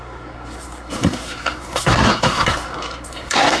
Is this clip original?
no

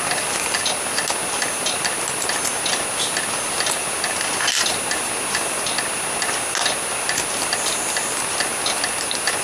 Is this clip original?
yes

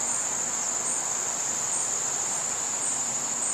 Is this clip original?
yes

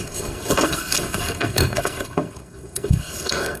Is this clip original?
no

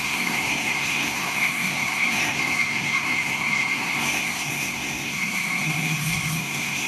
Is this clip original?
no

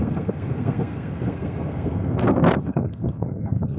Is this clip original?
no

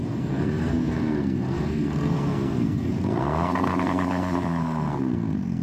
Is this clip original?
no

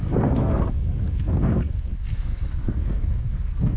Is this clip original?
no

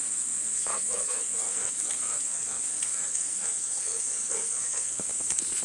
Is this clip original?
no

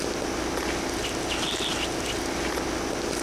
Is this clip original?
yes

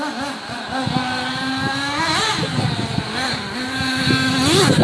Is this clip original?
yes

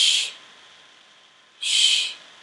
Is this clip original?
yes